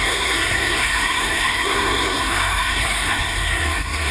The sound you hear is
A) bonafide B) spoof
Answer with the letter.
B